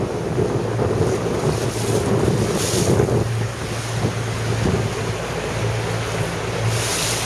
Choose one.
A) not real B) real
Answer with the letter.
B